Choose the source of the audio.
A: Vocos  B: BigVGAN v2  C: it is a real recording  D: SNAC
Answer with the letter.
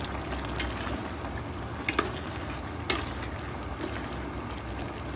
C